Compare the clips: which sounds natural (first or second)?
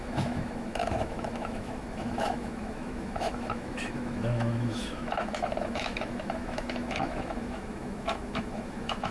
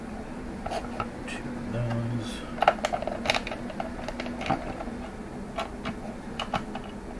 second